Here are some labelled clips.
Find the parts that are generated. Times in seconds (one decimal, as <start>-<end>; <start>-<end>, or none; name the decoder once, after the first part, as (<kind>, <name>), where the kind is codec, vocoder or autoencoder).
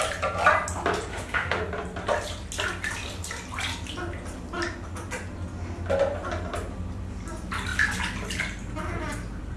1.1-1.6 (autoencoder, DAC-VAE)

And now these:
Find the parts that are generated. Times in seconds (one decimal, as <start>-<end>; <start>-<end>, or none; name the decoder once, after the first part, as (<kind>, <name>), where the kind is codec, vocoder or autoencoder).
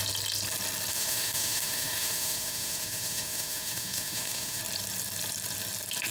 0.9-4.6 (autoencoder, DAC-VAE)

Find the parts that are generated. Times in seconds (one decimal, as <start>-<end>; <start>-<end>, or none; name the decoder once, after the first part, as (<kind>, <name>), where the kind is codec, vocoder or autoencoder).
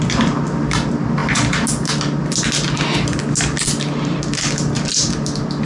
none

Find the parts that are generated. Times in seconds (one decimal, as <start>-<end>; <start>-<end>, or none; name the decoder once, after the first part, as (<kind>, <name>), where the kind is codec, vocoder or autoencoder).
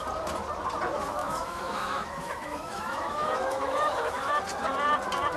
1.2-4.4 (autoencoder, DAC-VAE)